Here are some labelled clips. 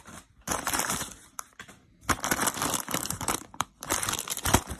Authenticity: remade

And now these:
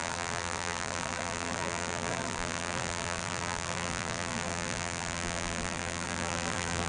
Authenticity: remade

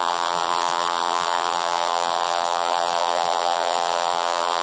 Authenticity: remade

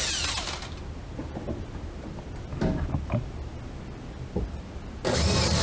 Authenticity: recorded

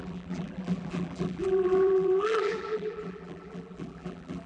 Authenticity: remade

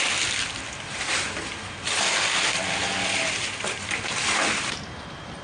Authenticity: recorded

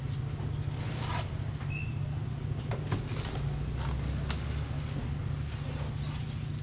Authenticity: recorded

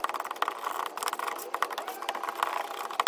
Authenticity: recorded